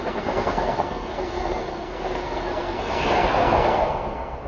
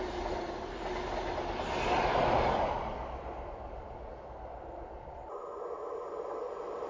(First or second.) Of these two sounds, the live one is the second